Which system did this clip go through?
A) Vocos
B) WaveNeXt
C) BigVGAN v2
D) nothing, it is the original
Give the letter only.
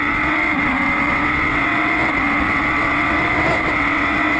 B